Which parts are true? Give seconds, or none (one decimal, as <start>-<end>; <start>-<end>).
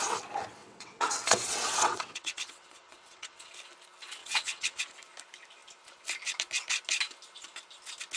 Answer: 0.0-0.6; 3.5-4.2; 4.8-8.2